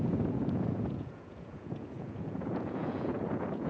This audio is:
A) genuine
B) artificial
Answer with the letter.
B